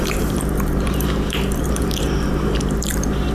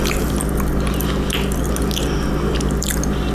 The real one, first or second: second